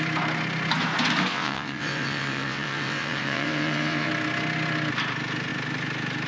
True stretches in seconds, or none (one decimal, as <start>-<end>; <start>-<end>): 0.0-1.3; 4.1-6.3